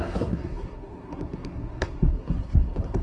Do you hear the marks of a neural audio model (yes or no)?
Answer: yes